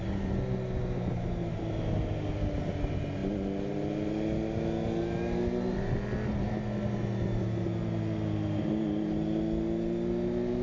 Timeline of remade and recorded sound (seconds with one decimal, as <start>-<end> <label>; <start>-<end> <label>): 0.0-10.6 recorded